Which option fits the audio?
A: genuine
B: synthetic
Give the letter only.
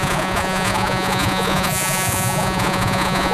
B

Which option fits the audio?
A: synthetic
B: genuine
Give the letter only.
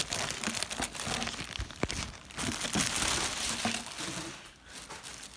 B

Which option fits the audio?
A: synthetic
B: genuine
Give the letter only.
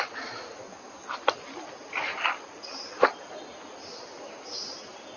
B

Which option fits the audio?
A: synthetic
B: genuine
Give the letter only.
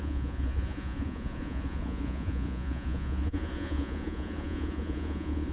A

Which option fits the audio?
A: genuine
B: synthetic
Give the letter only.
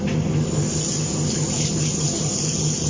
A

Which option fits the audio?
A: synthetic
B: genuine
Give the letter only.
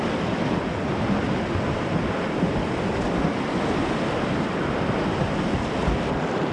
B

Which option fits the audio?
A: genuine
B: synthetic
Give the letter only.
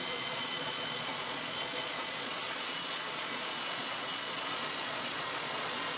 B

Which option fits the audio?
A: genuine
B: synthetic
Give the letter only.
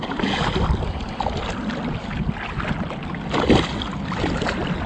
A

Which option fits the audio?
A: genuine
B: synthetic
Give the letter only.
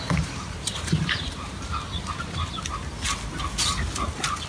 A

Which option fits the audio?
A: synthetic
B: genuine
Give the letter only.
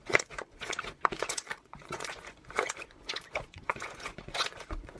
A